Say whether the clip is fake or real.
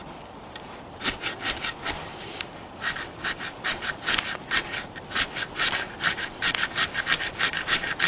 real